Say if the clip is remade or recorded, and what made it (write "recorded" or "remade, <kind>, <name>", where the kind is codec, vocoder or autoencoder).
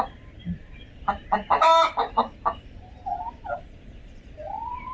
remade, vocoder, BigVGAN v2